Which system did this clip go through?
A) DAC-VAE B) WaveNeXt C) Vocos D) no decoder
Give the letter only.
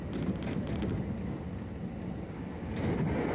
D